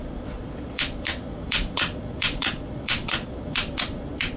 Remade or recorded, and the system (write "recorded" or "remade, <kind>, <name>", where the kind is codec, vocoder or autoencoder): remade, vocoder, Vocos